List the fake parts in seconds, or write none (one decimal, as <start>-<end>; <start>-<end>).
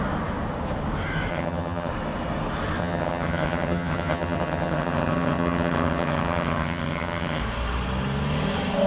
1.3-1.9; 2.8-7.4